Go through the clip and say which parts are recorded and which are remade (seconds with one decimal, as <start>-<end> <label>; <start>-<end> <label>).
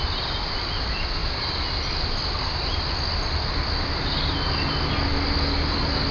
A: 0.0-6.1 recorded